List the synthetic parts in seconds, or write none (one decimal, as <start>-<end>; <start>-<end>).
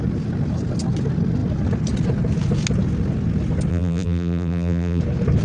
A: 3.7-5.0